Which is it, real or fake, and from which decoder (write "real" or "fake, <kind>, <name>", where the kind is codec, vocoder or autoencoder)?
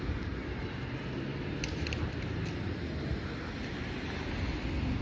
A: real